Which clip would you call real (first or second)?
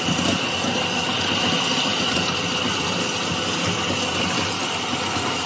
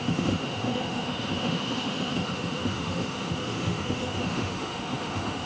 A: first